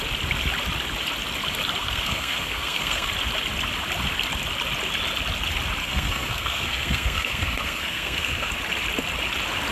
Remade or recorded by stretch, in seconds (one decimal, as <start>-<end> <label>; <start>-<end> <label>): 0.0-1.8 recorded; 1.8-3.1 remade; 3.1-5.8 recorded; 5.8-8.5 remade; 8.5-9.7 recorded